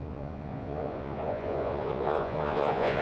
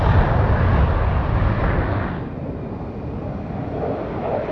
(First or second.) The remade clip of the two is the first